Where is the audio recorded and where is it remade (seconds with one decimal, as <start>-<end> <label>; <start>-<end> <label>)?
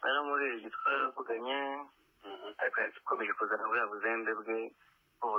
0.0-0.8 recorded; 0.8-1.4 remade; 1.4-2.3 recorded; 2.3-3.2 remade; 3.2-5.4 recorded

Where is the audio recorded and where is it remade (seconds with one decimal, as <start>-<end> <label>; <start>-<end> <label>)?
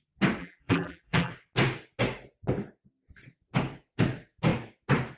0.0-0.4 recorded; 0.4-1.3 remade; 1.3-5.2 recorded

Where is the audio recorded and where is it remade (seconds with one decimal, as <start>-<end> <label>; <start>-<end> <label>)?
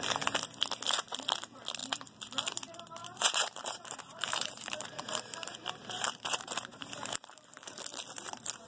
0.0-3.0 recorded; 3.0-7.8 remade; 7.8-8.7 recorded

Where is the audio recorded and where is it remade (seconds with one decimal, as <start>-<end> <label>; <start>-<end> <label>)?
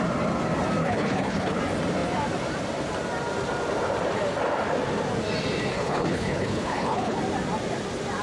0.0-0.8 recorded; 0.8-1.6 remade; 1.6-5.7 recorded; 5.7-7.2 remade; 7.2-8.2 recorded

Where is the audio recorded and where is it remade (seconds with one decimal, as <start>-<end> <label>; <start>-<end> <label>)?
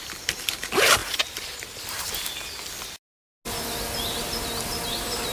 0.0-1.0 recorded; 1.0-1.8 remade; 1.8-5.3 recorded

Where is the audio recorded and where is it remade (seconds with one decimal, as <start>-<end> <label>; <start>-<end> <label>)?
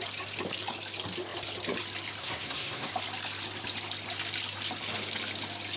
0.0-2.2 recorded; 2.2-2.9 remade; 2.9-5.8 recorded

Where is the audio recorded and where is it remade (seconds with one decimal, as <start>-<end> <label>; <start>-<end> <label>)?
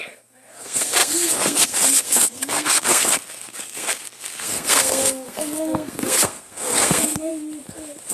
0.0-7.3 remade; 7.3-8.1 recorded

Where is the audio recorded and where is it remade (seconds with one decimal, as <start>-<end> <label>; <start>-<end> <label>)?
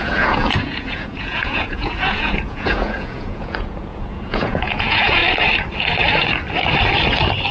0.0-5.2 remade; 5.2-7.5 recorded